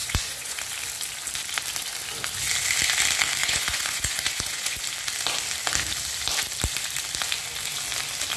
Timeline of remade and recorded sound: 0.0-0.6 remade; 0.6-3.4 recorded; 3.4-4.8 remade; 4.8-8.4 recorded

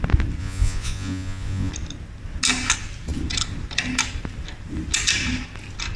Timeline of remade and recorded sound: 0.0-0.4 recorded; 0.4-1.7 remade; 1.7-6.0 recorded

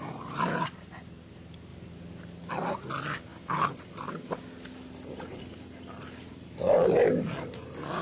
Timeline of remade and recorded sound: 0.0-8.0 recorded

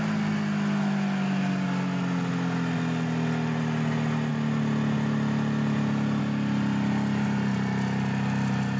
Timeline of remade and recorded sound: 0.0-8.8 recorded

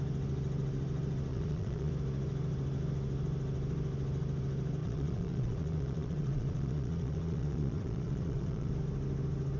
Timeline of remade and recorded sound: 0.0-1.3 recorded; 1.3-1.9 remade; 1.9-4.8 recorded; 4.8-8.7 remade; 8.7-9.6 recorded

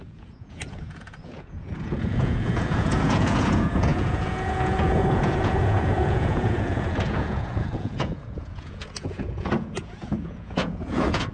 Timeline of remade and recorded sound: 0.0-11.3 remade